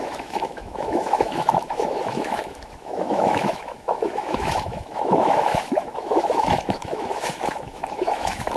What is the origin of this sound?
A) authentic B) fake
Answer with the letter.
B